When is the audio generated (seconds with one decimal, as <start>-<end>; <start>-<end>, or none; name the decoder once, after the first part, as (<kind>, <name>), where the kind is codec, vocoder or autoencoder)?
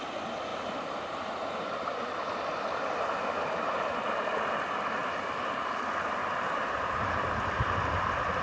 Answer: 0.5-4.4 (vocoder, BigVGAN v2); 5.0-5.7; 6.2-7.1